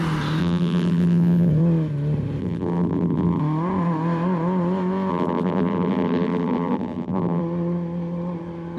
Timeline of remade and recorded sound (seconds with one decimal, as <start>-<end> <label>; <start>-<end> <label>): 0.0-0.4 recorded; 0.4-1.5 remade; 1.5-2.4 recorded; 2.4-3.4 remade; 3.4-5.1 recorded; 5.1-7.4 remade; 7.4-8.8 recorded